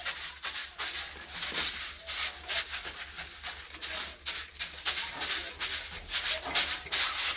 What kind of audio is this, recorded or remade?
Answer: recorded